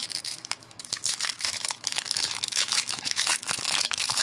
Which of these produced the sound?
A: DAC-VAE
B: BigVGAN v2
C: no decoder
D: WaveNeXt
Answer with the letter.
A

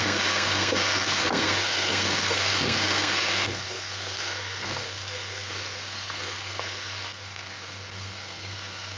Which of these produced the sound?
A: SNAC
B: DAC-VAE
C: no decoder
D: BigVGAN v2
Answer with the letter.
A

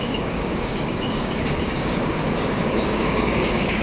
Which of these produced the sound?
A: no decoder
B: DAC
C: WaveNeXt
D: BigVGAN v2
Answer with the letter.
B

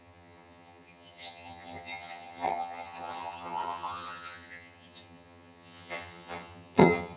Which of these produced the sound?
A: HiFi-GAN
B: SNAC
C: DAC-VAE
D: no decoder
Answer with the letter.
A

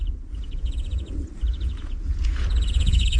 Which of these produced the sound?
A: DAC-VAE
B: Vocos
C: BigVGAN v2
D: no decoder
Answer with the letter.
B